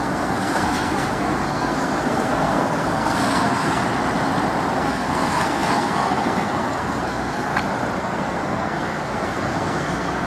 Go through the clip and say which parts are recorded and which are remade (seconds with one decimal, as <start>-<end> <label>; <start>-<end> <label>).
0.0-3.8 remade; 3.8-4.7 recorded; 4.7-7.5 remade; 7.5-8.0 recorded; 8.0-10.3 remade